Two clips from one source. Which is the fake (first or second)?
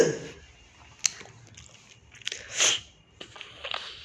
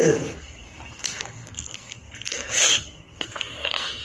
second